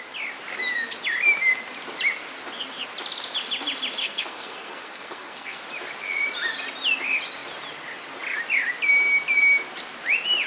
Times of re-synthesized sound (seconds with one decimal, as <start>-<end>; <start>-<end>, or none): 4.0-5.6